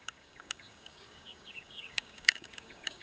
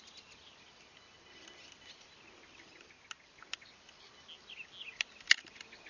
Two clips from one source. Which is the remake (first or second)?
first